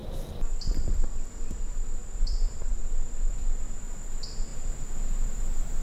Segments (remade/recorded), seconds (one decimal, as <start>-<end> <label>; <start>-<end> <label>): 0.0-1.5 remade; 1.5-2.0 recorded; 2.0-2.8 remade; 2.8-5.8 recorded